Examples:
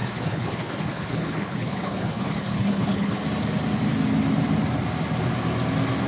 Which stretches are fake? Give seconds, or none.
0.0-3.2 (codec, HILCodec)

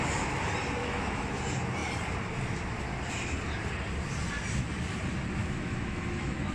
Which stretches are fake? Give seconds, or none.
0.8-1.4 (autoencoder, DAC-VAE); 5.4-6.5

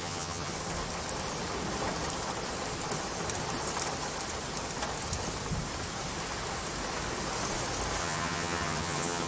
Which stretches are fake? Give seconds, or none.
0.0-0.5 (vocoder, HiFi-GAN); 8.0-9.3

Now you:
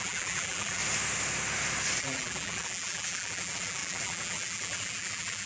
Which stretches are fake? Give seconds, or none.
0.0-0.8 (vocoder, BigVGAN v2); 2.0-5.5

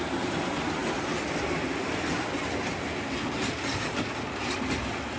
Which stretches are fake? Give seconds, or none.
none